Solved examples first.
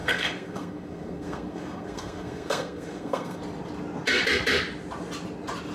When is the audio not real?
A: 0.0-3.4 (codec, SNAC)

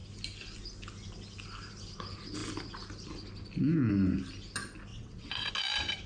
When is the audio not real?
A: 4.9-5.5 (vocoder, WaveNeXt)

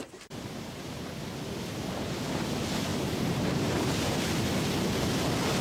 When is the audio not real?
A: 2.9-4.2 (vocoder, BigVGAN v2)

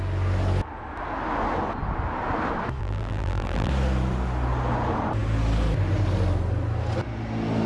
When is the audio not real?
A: 2.8-3.7 (vocoder, BigVGAN v2)

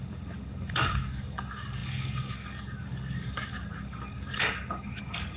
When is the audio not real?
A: 0.0-5.4 (codec, DAC)